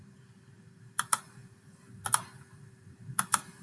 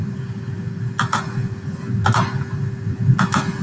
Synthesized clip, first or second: first